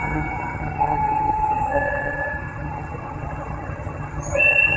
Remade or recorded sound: remade